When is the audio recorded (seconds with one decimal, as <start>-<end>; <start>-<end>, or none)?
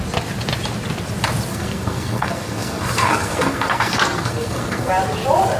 0.0-1.5; 4.9-5.6